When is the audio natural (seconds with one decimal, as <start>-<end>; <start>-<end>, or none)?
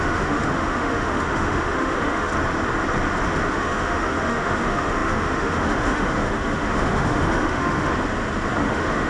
2.3-3.5; 7.9-8.7